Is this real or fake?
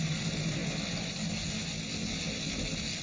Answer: real